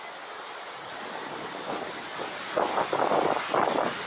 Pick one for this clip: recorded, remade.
recorded